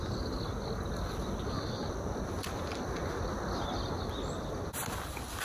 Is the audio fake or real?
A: real